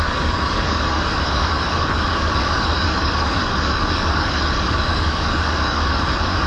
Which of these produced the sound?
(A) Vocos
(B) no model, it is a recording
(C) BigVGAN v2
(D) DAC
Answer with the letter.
D